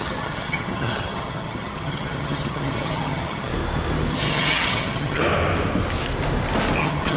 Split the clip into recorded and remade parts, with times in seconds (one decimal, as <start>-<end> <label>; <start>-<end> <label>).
0.0-3.5 remade; 3.5-4.1 recorded; 4.1-5.2 remade; 5.2-6.8 recorded; 6.8-7.2 remade